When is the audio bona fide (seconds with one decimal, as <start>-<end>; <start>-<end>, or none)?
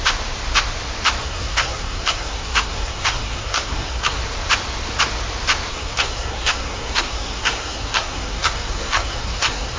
0.0-1.2; 4.2-5.7